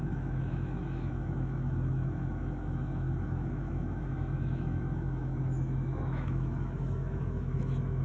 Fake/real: fake